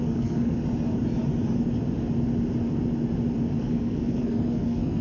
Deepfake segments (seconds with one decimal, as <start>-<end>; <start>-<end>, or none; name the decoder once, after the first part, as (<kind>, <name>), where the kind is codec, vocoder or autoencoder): 0.0-0.6 (codec, SNAC); 3.6-5.0